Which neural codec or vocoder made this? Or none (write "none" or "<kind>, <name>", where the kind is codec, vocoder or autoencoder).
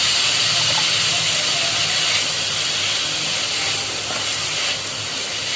none